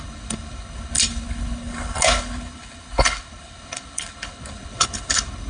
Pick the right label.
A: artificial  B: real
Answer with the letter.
A